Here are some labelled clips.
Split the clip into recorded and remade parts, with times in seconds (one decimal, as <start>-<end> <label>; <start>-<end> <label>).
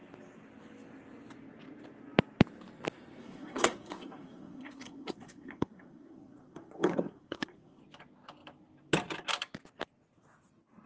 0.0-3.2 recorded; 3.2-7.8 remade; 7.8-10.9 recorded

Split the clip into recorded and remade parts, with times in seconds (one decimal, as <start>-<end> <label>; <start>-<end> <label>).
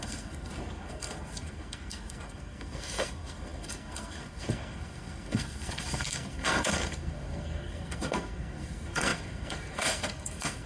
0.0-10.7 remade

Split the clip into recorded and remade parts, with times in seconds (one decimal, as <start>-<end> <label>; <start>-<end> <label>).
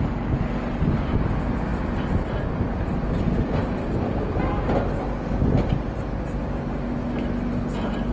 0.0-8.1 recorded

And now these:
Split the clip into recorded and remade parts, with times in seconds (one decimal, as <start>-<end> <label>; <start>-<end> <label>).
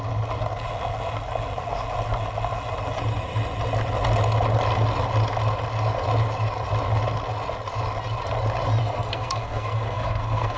0.0-8.8 recorded; 8.8-10.6 remade